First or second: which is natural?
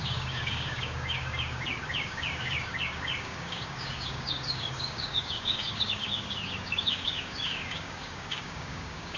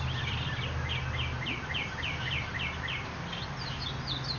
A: second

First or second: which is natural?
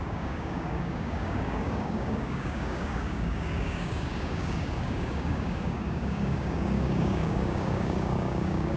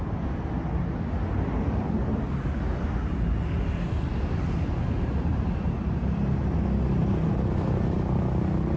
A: second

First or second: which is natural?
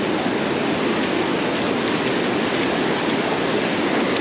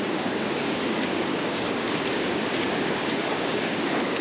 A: first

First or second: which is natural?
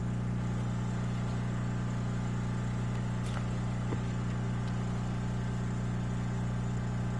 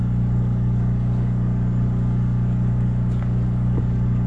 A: first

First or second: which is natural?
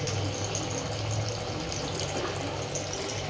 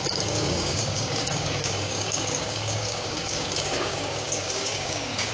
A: first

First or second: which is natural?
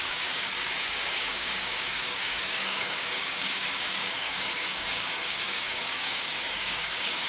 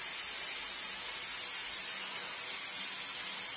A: second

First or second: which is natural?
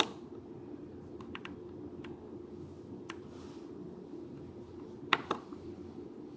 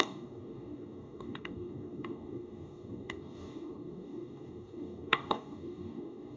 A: first